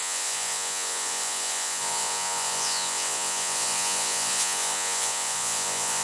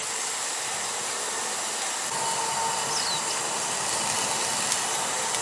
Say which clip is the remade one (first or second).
first